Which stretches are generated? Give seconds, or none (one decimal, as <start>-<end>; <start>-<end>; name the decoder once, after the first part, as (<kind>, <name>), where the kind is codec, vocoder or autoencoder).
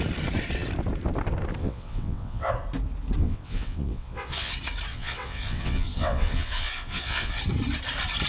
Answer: 1.6-2.5 (vocoder, WaveNeXt); 3.2-4.5; 4.9-7.4